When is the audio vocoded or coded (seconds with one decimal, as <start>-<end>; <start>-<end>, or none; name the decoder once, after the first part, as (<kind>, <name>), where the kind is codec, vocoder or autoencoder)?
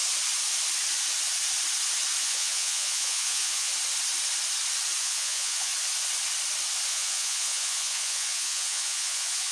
2.2-3.7 (vocoder, Vocos); 5.0-5.7; 6.9-9.5